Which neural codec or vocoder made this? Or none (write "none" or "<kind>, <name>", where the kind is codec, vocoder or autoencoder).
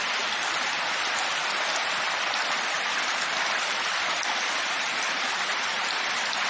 vocoder, BigVGAN v2